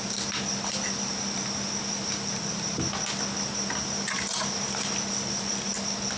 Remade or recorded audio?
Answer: recorded